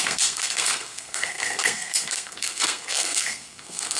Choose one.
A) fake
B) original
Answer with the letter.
A